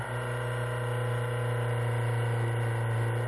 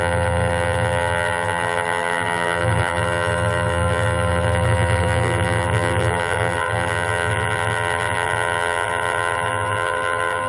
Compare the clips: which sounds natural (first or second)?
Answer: first